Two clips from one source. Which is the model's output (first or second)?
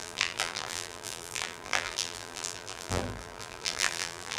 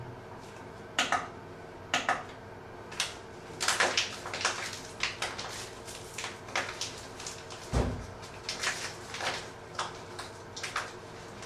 first